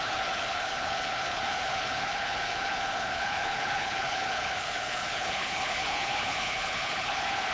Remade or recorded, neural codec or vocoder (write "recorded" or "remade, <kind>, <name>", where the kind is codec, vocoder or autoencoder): remade, codec, HILCodec